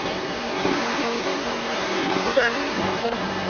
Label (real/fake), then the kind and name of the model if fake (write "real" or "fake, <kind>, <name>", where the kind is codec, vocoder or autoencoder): fake, codec, SNAC